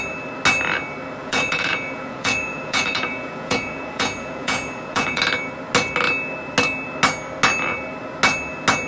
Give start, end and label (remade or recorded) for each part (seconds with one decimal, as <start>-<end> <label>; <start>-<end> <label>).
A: 0.0-1.2 recorded; 1.2-5.2 remade; 5.2-8.9 recorded